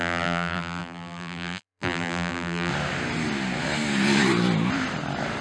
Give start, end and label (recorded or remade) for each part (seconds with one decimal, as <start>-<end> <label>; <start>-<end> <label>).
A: 0.0-2.7 remade; 2.7-5.4 recorded